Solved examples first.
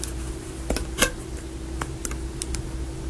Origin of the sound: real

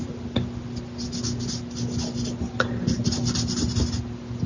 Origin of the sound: real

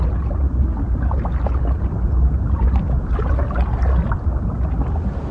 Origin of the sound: real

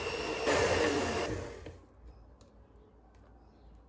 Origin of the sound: real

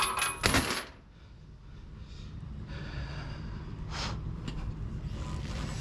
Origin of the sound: real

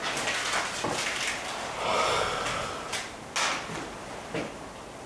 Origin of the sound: real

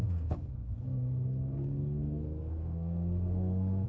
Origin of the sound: fake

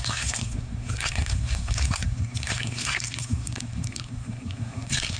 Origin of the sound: fake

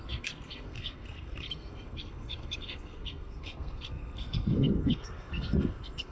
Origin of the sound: fake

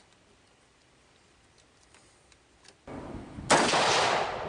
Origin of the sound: real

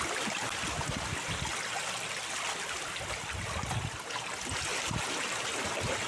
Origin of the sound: real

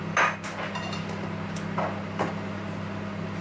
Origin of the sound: real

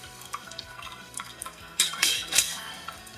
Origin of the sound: fake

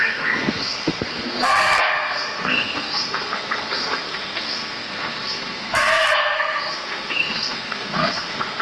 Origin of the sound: fake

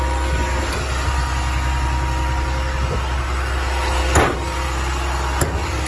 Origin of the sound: real